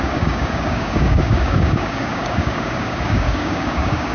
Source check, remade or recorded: remade